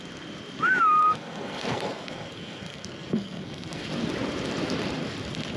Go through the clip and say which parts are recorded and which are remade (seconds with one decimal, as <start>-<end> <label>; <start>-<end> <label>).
0.0-1.0 recorded; 1.0-3.9 remade; 3.9-5.6 recorded